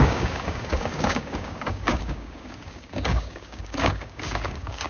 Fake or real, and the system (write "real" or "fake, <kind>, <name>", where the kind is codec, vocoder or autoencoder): fake, codec, DAC